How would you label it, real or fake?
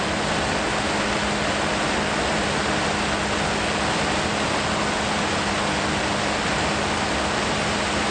real